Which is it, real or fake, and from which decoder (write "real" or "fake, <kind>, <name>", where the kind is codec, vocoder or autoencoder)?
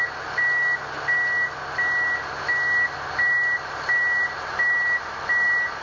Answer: real